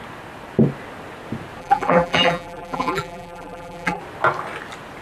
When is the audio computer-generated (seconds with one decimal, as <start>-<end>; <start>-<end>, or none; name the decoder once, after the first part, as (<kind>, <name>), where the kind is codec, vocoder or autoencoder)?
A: 1.6-4.0 (vocoder, BigVGAN v2)